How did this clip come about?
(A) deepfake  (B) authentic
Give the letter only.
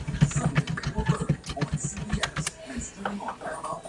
B